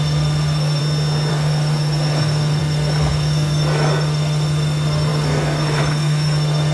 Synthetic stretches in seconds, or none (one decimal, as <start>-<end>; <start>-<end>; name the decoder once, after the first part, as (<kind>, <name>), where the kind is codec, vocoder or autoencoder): 0.0-0.8 (codec, SNAC); 1.3-6.7